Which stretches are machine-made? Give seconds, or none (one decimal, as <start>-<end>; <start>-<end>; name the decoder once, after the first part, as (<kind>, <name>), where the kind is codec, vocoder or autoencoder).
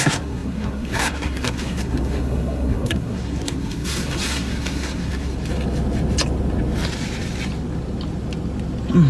0.0-5.3 (codec, SNAC)